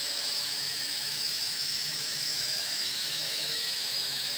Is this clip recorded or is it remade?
remade